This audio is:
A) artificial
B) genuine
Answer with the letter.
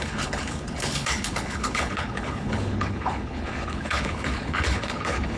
A